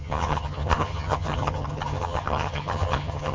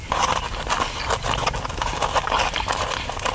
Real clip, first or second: second